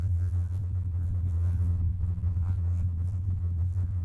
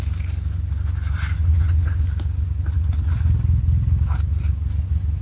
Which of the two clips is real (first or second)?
second